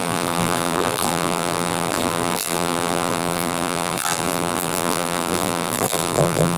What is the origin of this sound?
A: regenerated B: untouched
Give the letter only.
A